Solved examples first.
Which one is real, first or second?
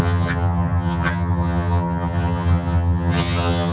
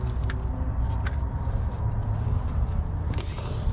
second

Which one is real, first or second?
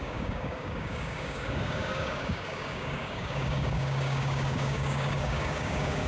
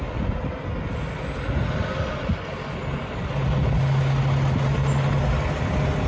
second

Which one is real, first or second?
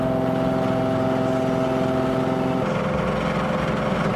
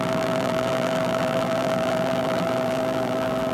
first